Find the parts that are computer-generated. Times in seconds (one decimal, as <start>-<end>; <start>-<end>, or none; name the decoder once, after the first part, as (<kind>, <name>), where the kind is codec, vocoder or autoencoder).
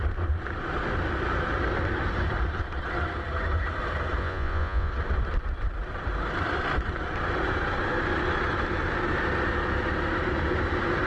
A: 4.2-4.9 (vocoder, Vocos)